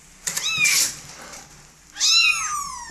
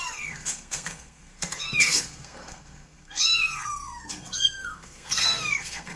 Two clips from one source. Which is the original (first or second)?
first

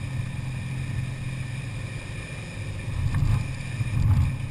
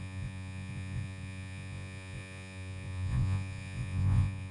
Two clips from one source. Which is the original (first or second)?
first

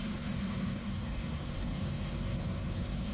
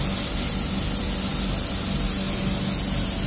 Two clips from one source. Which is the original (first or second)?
second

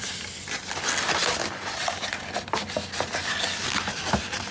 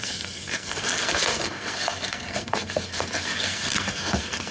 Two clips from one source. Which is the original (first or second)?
first